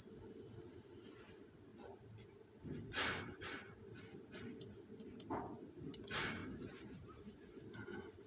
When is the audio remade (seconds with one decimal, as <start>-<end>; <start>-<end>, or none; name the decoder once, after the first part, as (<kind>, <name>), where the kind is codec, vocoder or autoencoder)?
6.4-7.6 (vocoder, BigVGAN v2)